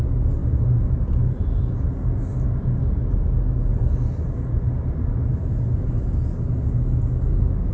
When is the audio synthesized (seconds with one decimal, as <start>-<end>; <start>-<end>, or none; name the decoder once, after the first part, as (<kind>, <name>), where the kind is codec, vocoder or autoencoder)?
0.4-1.8 (vocoder, BigVGAN v2); 3.7-5.3